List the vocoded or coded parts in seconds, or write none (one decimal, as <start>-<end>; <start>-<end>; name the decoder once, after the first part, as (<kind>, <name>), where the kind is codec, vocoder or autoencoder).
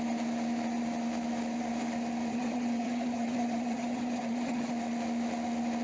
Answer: 2.3-4.7 (vocoder, HiFi-GAN)